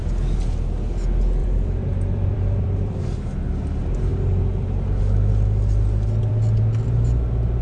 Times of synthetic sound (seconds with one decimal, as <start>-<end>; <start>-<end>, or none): 1.4-3.0